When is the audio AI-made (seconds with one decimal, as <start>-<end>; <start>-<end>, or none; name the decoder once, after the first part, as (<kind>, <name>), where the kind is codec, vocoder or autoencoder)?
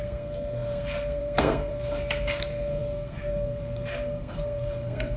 0.0-5.2 (codec, SNAC)